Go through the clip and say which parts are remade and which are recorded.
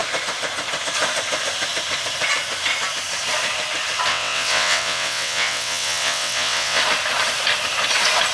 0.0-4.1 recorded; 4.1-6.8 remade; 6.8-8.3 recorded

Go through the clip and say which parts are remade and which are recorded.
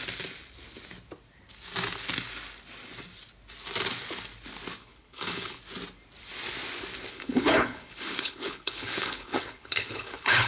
0.0-4.8 recorded; 4.8-5.6 remade; 5.6-7.1 recorded; 7.1-10.5 remade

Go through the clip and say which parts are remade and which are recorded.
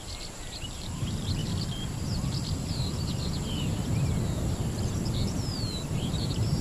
0.0-1.4 remade; 1.4-4.8 recorded; 4.8-6.6 remade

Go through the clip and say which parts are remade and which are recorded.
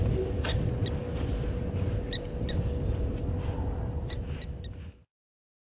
0.0-5.7 recorded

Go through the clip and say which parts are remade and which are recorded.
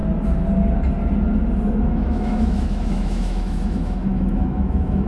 0.0-1.8 recorded; 1.8-5.1 remade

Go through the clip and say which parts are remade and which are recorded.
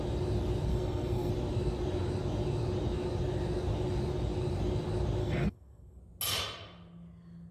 0.0-0.7 recorded; 0.7-1.3 remade; 1.3-5.2 recorded; 5.2-6.0 remade; 6.0-7.5 recorded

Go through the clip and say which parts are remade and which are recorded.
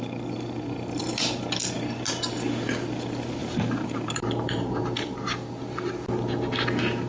0.0-3.4 recorded; 3.4-4.8 remade; 4.8-7.1 recorded